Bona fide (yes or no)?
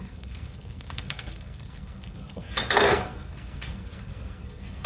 no